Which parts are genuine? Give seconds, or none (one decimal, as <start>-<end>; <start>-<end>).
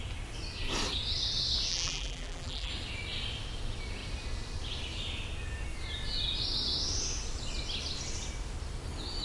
0.0-1.7; 2.7-9.2